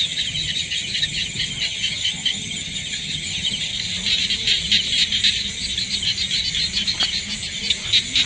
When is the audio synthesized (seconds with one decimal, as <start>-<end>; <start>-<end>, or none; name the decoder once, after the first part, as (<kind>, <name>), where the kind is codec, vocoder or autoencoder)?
0.0-3.7 (vocoder, HiFi-GAN)